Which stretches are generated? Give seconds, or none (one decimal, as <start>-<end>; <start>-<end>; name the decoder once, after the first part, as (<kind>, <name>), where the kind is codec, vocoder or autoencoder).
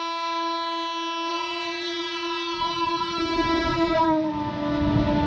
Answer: 1.3-3.2 (vocoder, Vocos); 3.7-4.3